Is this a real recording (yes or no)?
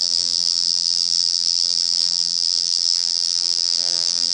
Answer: no